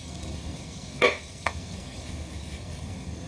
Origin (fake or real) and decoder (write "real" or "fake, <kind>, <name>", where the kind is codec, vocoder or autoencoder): fake, codec, SNAC